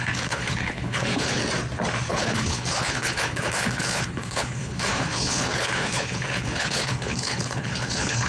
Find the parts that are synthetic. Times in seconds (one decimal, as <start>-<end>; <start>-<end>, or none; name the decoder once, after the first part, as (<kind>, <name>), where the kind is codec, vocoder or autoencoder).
0.0-1.4 (codec, HILCodec); 2.1-8.3